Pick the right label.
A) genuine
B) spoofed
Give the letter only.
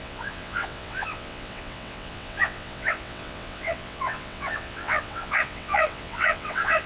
B